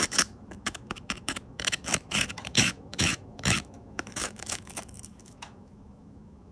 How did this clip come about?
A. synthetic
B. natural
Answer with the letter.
A